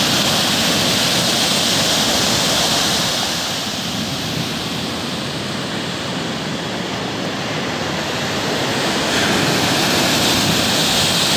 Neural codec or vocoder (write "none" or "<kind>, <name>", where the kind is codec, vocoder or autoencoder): none